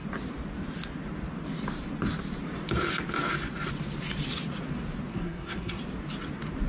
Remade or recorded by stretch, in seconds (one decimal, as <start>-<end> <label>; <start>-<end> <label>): 0.0-5.1 recorded; 5.1-5.8 remade; 5.8-6.7 recorded